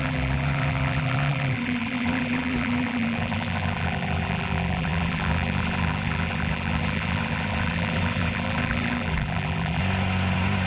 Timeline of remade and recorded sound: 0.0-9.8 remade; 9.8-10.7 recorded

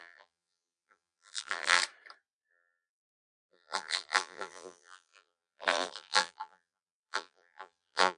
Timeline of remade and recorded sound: 0.0-1.8 remade; 1.8-2.5 recorded; 2.5-8.2 remade

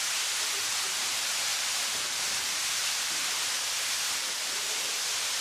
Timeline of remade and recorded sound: 0.0-5.4 remade

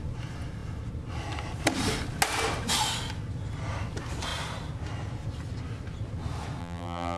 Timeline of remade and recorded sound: 0.0-6.6 recorded; 6.6-7.2 remade